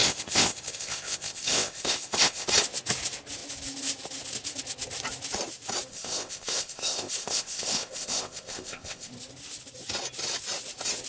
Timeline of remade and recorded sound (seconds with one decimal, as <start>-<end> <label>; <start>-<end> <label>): 0.0-2.5 remade; 2.5-5.9 recorded; 5.9-9.1 remade; 9.1-11.1 recorded